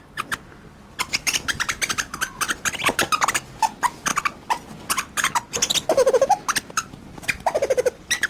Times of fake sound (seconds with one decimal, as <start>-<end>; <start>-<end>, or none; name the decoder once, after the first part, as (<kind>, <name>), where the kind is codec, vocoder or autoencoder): none